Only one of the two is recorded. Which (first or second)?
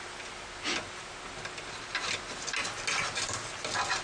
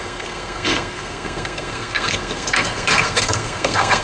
first